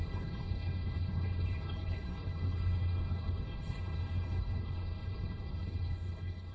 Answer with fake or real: fake